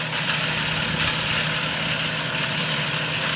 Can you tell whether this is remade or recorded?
recorded